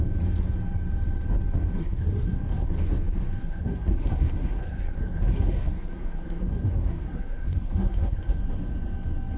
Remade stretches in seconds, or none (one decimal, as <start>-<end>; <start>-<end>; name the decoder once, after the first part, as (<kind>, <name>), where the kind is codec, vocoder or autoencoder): 1.8-2.7 (codec, SNAC); 3.4-8.4